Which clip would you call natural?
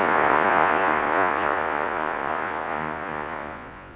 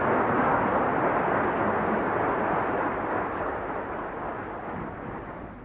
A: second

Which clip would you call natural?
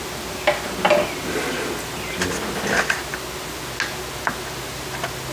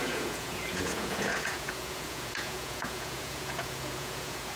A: first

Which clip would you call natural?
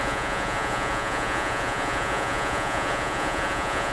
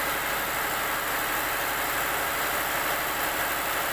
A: second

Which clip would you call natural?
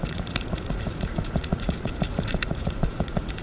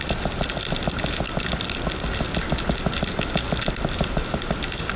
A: second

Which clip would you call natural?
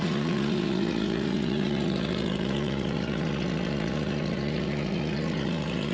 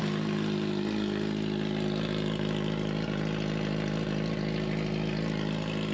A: second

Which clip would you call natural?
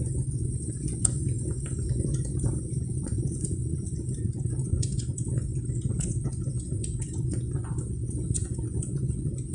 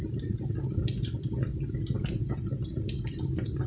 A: second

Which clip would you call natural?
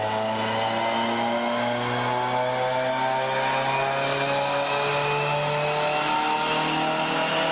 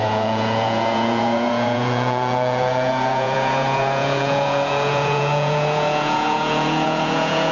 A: first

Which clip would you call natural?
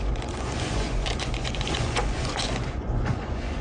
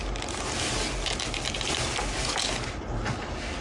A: second